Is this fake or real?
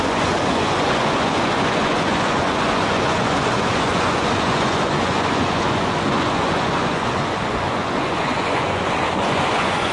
fake